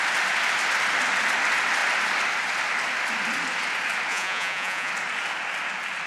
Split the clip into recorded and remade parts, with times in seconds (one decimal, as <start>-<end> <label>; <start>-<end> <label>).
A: 0.0-4.1 recorded; 4.1-4.9 remade; 4.9-6.1 recorded